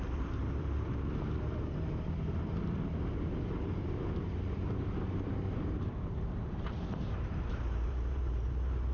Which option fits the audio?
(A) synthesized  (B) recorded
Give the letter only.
A